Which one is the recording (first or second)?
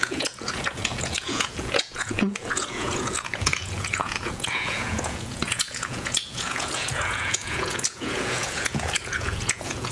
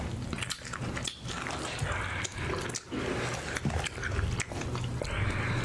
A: second